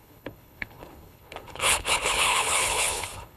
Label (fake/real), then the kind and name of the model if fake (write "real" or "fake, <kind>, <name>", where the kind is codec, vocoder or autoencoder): fake, codec, HILCodec